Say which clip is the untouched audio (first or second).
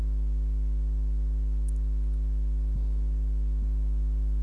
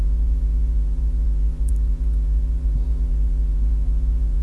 first